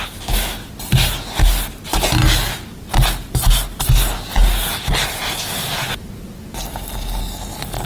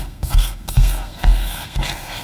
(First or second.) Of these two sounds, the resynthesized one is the second